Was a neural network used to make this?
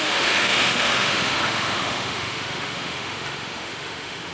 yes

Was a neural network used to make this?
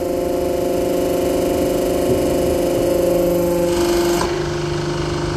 no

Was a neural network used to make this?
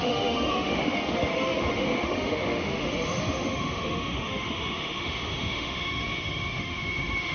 yes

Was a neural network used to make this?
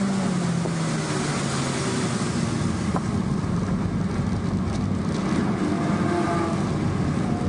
no